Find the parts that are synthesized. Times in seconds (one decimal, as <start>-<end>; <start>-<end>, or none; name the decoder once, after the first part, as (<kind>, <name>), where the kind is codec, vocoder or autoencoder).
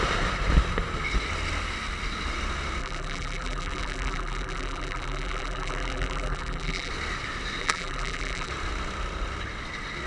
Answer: 2.8-6.9 (vocoder, BigVGAN v2); 7.6-8.5